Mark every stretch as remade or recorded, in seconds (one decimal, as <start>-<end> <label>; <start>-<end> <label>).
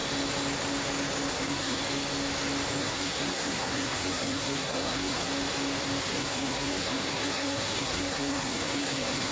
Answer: 0.0-1.3 recorded; 1.3-1.8 remade; 1.8-2.8 recorded; 2.8-5.3 remade; 5.3-6.0 recorded; 6.0-9.3 remade